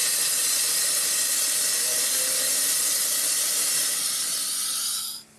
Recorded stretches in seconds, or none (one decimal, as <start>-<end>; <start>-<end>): 0.0-5.4